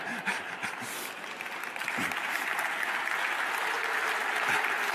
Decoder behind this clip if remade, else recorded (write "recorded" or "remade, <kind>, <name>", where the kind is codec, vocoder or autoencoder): recorded